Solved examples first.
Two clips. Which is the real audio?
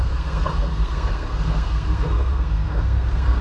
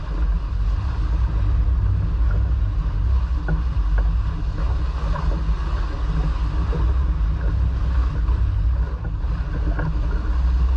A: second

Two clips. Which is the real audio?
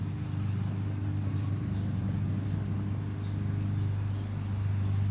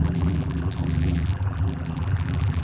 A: first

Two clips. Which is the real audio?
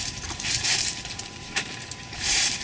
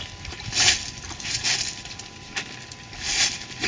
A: second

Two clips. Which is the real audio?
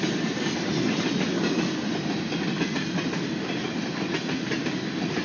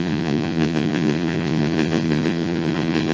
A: first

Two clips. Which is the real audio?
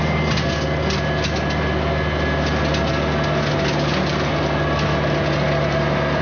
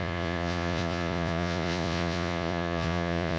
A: first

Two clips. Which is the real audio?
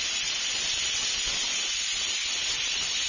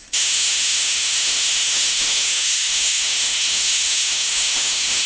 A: first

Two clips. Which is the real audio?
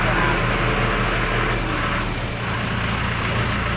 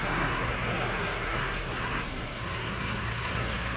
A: first